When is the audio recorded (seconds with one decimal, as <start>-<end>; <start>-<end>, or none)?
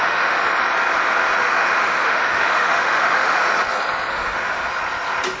0.4-1.4; 3.4-4.1; 4.7-5.4